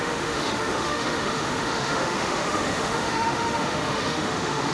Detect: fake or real fake